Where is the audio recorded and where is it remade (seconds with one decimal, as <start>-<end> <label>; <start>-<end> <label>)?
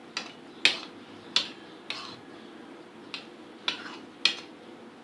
0.0-5.0 recorded